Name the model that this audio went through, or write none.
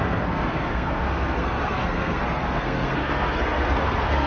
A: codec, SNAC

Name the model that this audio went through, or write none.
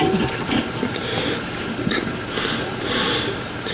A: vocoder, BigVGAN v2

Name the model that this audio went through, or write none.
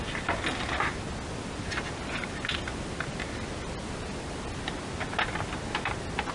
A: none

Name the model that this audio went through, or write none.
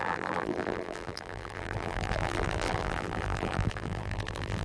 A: vocoder, BigVGAN v2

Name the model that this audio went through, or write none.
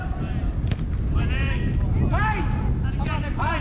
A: none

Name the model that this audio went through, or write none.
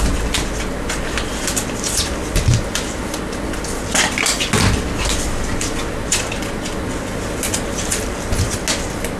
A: none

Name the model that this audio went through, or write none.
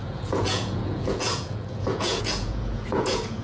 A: vocoder, Vocos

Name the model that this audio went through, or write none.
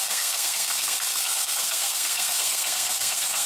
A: codec, SNAC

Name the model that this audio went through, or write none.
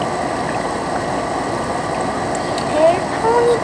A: none